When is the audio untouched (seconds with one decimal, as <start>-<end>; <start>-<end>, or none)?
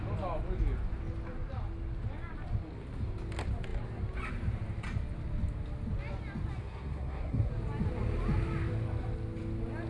0.0-6.6; 7.5-9.9